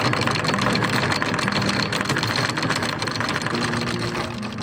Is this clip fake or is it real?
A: real